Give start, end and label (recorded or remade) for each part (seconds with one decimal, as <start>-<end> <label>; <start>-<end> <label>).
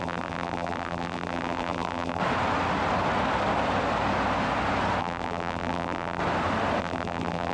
0.0-2.2 remade; 2.2-5.0 recorded; 5.0-6.2 remade; 6.2-6.8 recorded; 6.8-7.5 remade